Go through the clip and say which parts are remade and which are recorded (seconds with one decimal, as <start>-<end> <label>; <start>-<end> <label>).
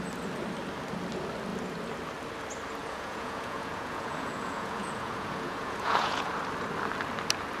0.0-2.8 recorded; 2.8-6.3 remade; 6.3-7.6 recorded